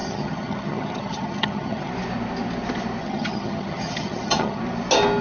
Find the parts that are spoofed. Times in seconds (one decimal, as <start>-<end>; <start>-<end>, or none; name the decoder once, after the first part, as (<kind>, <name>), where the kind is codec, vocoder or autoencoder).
0.0-1.9 (vocoder, HiFi-GAN); 3.0-4.6